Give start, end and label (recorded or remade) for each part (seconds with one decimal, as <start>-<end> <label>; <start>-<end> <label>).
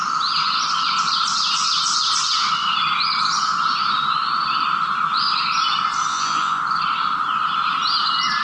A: 0.0-6.1 recorded; 6.1-6.6 remade; 6.6-8.4 recorded